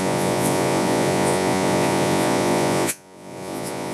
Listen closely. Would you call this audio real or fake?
fake